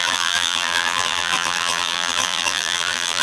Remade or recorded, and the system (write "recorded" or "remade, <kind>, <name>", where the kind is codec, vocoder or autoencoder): remade, vocoder, BigVGAN v2